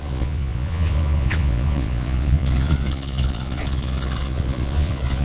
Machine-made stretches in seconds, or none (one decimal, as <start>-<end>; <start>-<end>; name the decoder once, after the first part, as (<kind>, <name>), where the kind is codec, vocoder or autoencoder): 0.0-5.2 (vocoder, Vocos)